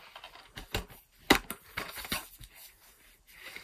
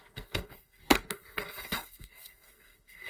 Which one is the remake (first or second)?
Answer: second